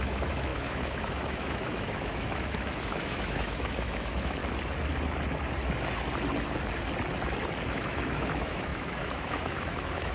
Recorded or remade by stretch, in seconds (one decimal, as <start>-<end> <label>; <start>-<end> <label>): 0.0-4.4 remade; 4.4-7.7 recorded; 7.7-10.1 remade